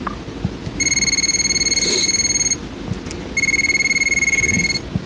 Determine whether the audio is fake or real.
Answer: real